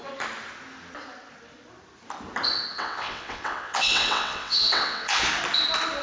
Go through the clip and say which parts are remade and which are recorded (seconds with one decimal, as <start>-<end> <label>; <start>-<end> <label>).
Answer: 0.0-2.7 recorded; 2.7-5.2 remade; 5.2-6.0 recorded